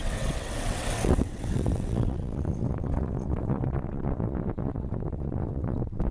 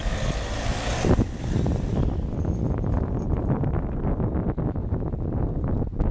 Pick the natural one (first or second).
second